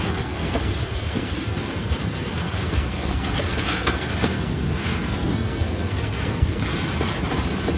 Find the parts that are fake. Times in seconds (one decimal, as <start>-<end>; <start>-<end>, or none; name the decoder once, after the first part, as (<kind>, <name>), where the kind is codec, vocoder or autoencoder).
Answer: 0.0-6.7 (codec, SNAC)